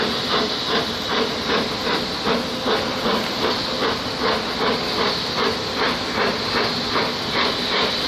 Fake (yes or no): no